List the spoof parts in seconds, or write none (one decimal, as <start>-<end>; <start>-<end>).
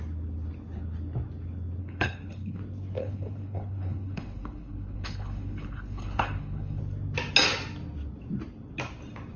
1.8-2.6; 3.0-6.8